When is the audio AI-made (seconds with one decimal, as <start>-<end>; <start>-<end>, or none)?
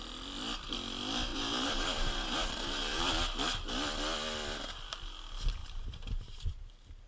1.3-3.1; 5.6-6.6